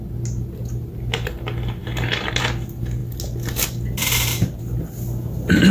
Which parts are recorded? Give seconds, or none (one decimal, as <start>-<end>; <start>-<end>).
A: 0.0-5.7